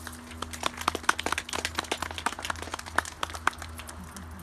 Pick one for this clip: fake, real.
real